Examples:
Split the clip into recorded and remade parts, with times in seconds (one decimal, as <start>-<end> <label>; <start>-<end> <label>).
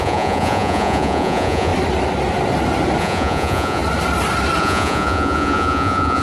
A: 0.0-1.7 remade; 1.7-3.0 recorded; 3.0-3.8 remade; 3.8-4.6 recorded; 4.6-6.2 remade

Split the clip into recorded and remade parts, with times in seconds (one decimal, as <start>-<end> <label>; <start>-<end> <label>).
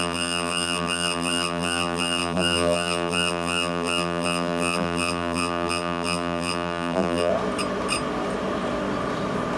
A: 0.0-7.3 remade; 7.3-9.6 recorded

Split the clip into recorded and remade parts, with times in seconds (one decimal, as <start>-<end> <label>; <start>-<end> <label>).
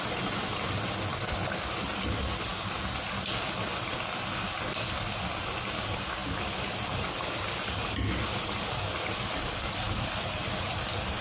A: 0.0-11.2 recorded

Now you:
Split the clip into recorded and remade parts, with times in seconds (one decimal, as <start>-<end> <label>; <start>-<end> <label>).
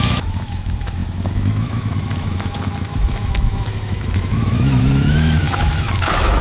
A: 0.0-6.4 remade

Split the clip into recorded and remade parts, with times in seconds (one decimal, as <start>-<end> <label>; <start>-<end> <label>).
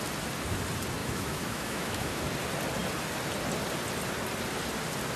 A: 0.0-1.0 recorded; 1.0-2.2 remade; 2.2-5.2 recorded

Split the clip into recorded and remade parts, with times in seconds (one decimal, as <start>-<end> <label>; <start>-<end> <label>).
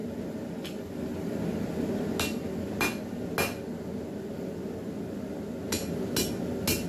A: 0.0-6.9 recorded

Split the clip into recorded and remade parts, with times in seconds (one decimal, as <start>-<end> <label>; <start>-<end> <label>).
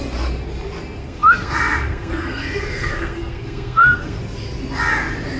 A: 0.0-1.0 recorded; 1.0-4.2 remade; 4.2-5.4 recorded